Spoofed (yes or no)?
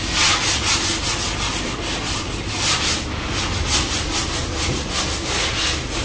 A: no